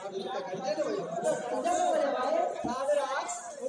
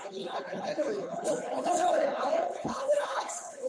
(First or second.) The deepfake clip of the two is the second